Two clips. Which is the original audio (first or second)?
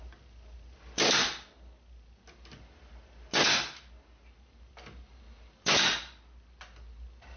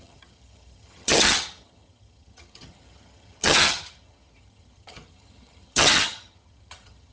first